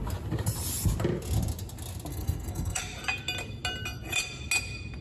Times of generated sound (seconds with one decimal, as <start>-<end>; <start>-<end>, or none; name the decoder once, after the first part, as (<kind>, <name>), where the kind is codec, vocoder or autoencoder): 2.1-2.8 (codec, SNAC)

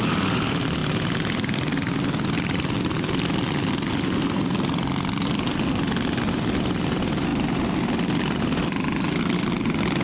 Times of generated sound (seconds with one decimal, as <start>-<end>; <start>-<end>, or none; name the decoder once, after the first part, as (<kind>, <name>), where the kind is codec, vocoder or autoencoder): none

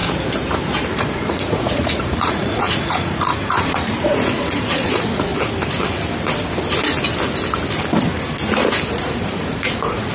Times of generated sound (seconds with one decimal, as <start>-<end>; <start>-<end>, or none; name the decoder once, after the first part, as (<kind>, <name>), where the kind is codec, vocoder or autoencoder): 0.9-5.3 (vocoder, Vocos); 8.9-10.1

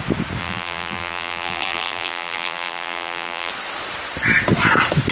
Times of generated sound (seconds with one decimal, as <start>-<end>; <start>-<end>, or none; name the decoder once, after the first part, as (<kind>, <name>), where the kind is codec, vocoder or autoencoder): 0.4-3.5 (vocoder, BigVGAN v2)

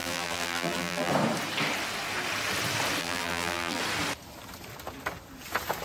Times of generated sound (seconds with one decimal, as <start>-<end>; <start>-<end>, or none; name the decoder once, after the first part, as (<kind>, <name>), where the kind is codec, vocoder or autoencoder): 0.0-1.1 (vocoder, BigVGAN v2); 3.0-3.8